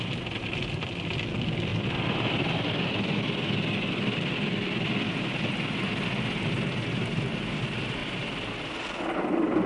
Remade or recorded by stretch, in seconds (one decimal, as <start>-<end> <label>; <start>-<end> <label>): 0.0-9.7 recorded